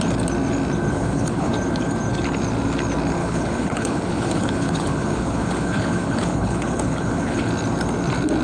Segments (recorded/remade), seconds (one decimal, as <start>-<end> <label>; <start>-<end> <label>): 0.0-0.9 recorded; 0.9-1.5 remade; 1.5-3.2 recorded; 3.2-7.5 remade; 7.5-8.4 recorded